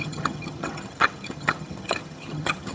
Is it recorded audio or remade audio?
remade